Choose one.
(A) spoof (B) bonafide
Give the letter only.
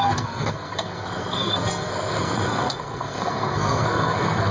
A